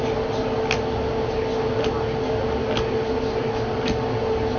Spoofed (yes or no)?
no